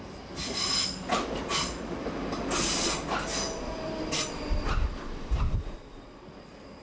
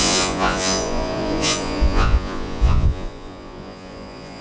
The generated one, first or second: second